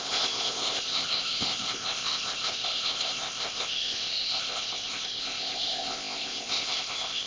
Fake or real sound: fake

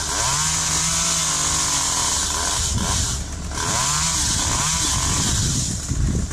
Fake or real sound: real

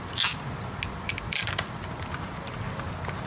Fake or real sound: real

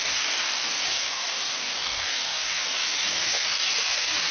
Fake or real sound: fake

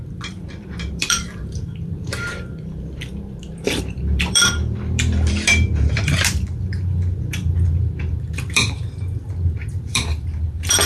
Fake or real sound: fake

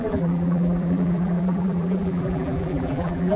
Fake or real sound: fake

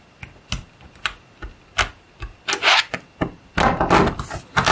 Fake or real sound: real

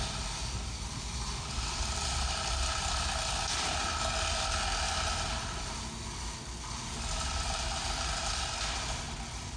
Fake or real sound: real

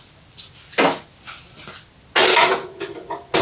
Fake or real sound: real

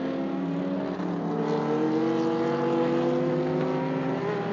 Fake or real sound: real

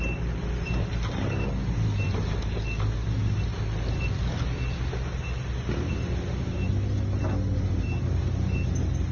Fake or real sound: real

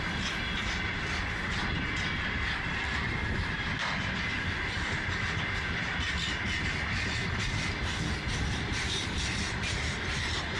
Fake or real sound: real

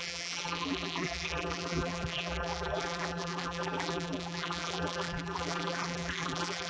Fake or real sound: fake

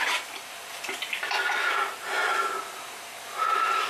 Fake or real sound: real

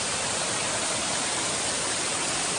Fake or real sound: real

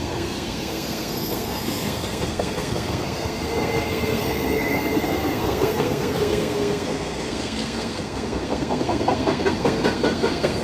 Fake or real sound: fake